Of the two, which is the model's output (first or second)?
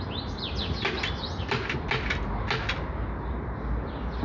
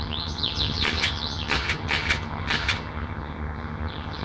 second